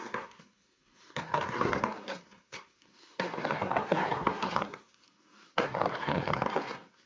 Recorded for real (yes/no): no